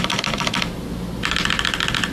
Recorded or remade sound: recorded